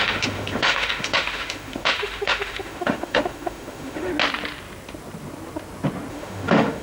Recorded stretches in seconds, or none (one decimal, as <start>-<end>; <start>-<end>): 4.1-6.1